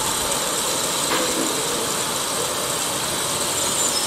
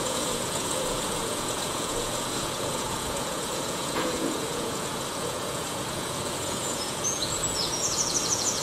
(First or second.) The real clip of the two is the first